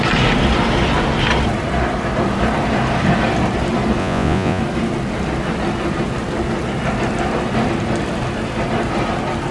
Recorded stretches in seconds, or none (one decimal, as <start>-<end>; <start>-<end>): 0.0-4.0; 4.6-9.5